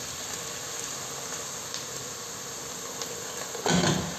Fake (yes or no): no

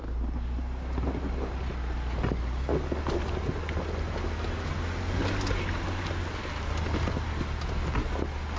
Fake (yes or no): no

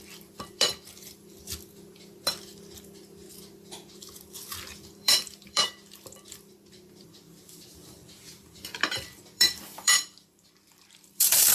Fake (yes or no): yes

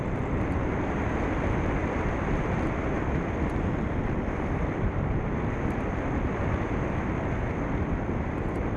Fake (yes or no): yes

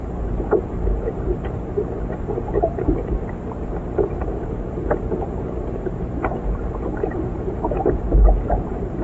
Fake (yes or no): yes